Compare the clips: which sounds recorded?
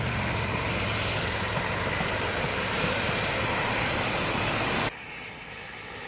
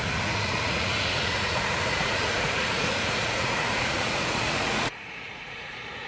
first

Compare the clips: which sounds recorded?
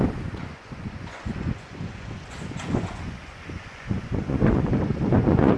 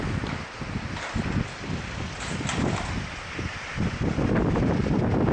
second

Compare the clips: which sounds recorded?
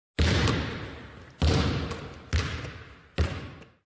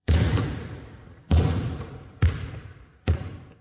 first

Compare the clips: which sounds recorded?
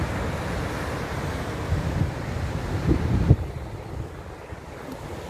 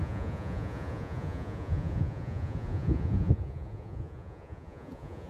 first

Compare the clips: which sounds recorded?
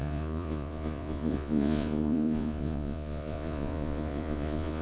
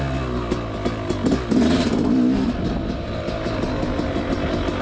second